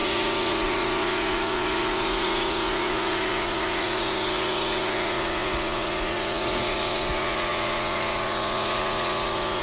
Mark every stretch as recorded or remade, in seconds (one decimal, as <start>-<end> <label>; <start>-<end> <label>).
0.0-9.6 remade